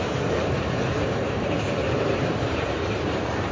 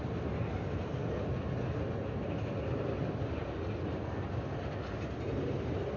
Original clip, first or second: second